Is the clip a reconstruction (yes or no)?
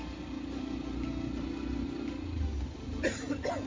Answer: no